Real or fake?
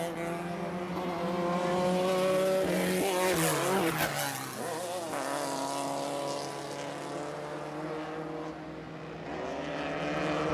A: real